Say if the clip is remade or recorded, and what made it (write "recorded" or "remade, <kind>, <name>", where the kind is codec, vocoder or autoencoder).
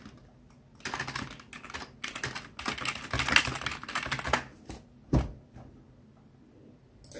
recorded